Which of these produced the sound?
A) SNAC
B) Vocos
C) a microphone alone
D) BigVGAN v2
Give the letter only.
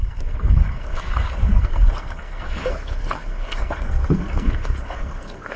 A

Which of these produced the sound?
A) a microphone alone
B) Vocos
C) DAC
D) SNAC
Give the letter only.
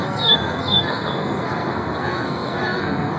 D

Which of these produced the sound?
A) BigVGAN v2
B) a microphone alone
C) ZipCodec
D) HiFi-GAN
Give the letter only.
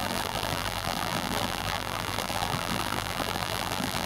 A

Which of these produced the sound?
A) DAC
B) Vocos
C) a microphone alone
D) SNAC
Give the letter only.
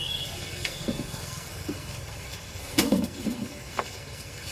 D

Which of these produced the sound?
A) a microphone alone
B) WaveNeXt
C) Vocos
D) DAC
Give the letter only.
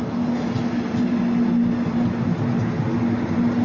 A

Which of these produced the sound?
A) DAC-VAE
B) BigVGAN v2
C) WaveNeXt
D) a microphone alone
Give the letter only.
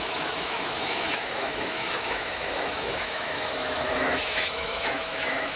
A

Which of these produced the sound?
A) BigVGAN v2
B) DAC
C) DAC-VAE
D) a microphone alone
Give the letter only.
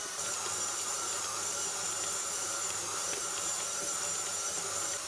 A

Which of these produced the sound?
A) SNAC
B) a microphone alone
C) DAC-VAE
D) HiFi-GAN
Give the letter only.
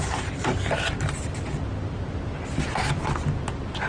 B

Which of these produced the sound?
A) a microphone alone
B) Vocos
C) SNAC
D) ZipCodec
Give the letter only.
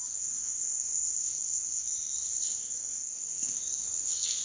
C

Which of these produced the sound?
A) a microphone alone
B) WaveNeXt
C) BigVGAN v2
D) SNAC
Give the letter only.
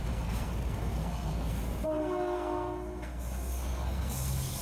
D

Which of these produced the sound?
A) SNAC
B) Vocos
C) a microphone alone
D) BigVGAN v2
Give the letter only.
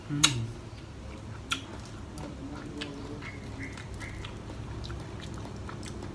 C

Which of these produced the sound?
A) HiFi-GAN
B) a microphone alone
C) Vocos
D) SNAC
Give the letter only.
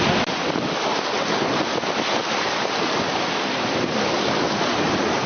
B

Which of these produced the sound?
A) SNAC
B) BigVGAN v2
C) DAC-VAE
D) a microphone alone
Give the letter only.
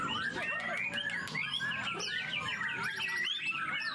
D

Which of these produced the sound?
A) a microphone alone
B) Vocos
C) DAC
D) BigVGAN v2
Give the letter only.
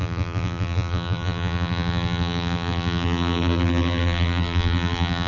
D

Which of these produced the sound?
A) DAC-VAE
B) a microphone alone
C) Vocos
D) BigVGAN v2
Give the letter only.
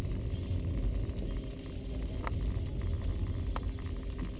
B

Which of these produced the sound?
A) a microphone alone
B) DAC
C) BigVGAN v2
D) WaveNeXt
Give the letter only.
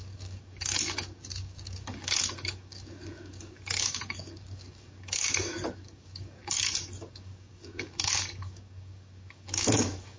B